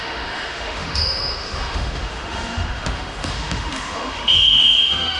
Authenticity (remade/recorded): remade